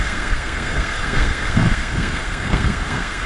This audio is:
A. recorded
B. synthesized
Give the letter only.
B